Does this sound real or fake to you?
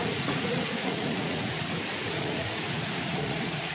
fake